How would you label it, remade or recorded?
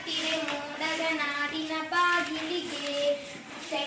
remade